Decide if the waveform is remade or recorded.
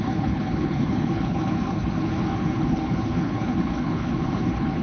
remade